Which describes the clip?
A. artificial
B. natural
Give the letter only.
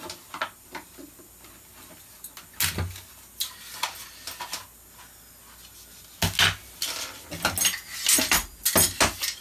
B